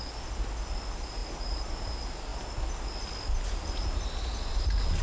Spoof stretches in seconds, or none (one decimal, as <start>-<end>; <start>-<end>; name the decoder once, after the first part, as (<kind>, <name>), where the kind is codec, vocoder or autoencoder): 1.2-1.7 (vocoder, BigVGAN v2)